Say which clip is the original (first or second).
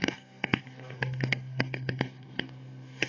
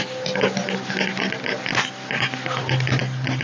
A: second